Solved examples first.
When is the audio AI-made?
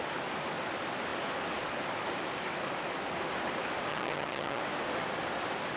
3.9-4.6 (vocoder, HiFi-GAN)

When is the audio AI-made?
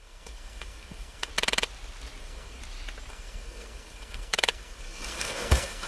0.0-1.3 (codec, SNAC); 2.2-2.6; 3.1-5.9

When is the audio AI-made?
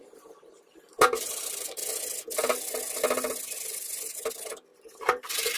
0.0-1.8 (vocoder, BigVGAN v2); 4.3-5.6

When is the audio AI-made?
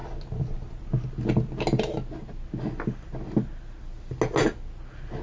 none